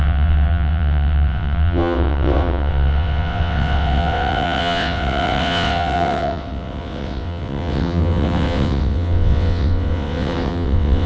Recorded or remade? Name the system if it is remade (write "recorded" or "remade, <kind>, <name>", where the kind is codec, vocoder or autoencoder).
remade, vocoder, WaveNeXt